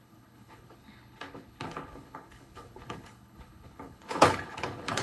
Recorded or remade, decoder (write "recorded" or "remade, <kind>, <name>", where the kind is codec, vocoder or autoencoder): remade, codec, HILCodec